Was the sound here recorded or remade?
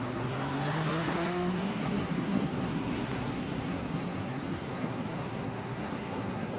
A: remade